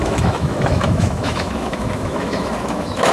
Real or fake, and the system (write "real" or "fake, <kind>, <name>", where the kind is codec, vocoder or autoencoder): fake, autoencoder, DAC-VAE